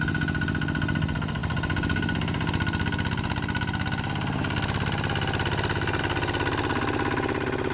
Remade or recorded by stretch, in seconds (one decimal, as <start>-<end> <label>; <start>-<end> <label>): 0.0-7.7 recorded